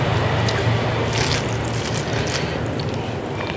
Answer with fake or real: real